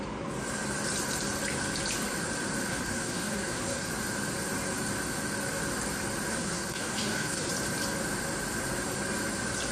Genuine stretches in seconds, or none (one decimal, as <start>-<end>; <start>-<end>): 0.0-2.7; 3.9-6.3; 7.5-9.7